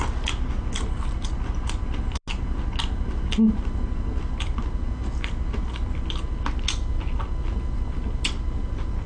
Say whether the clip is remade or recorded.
recorded